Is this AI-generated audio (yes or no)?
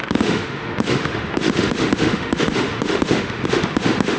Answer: yes